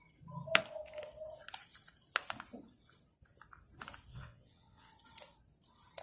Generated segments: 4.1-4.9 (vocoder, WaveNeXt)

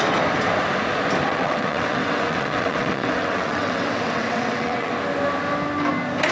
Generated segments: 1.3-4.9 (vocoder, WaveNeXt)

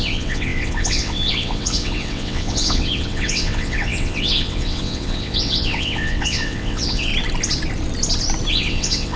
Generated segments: 0.0-7.1 (vocoder, WaveNeXt); 8.5-9.2